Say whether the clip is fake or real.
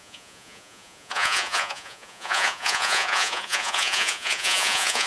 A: fake